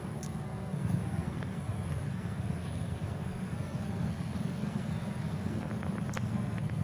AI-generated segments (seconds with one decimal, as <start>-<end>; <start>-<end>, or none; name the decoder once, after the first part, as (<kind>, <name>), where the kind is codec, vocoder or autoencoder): 0.0-5.7 (codec, SNAC); 6.2-6.8